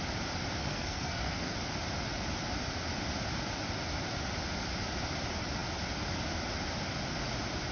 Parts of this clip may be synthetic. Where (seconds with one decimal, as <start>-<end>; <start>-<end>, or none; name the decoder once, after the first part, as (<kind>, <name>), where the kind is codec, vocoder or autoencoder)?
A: 0.6-1.5 (codec, SNAC)